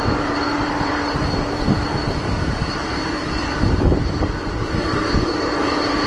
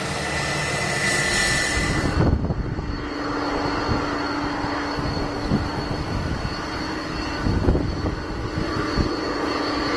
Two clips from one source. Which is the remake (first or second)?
first